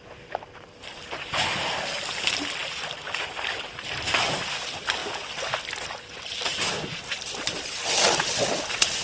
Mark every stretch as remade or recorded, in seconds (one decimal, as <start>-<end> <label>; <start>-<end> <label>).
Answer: 0.0-9.0 recorded